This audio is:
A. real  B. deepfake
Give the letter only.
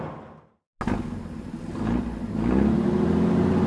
A